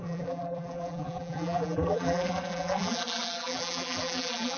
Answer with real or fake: fake